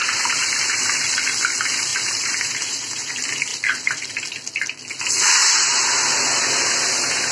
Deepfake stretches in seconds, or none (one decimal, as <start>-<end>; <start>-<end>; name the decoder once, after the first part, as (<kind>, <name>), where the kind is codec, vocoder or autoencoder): 0.0-0.5 (vocoder, BigVGAN v2); 1.9-3.1; 3.5-4.1